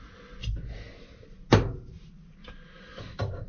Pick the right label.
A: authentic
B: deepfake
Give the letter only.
A